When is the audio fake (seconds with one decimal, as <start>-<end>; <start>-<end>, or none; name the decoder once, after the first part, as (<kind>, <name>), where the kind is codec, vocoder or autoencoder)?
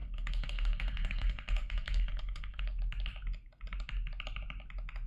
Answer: 0.0-2.8 (codec, SNAC)